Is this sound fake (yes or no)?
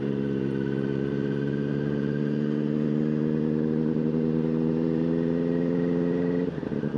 yes